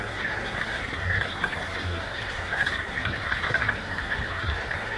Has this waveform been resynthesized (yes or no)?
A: yes